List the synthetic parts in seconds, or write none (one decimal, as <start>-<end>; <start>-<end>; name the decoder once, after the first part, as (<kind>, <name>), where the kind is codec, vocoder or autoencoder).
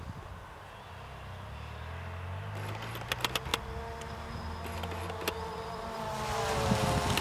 none